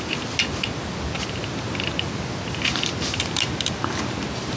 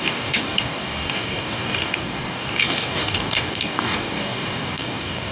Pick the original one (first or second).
first